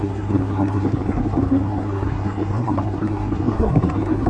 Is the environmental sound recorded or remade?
remade